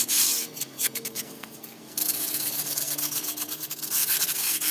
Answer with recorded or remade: remade